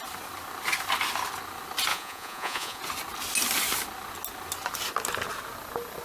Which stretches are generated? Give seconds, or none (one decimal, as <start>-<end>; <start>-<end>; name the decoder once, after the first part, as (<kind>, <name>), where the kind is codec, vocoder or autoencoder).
1.9-2.8 (vocoder, Vocos)